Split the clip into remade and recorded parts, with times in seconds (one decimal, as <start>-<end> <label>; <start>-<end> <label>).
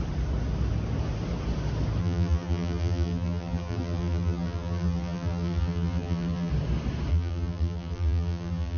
0.0-2.0 recorded; 2.0-6.5 remade; 6.5-7.1 recorded; 7.1-8.8 remade